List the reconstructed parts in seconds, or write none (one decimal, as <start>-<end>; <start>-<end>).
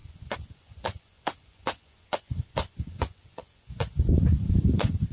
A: 0.0-5.1